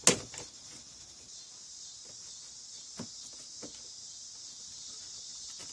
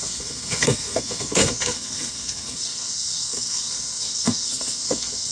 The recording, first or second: first